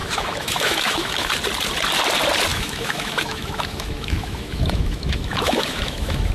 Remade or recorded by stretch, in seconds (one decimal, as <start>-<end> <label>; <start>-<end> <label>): 0.0-1.3 remade; 1.3-2.5 recorded; 2.5-6.3 remade